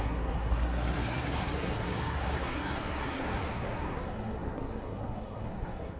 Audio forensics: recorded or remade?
remade